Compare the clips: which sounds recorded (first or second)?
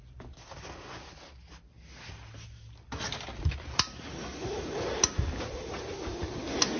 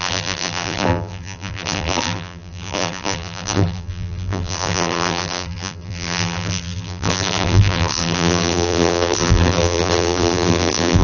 first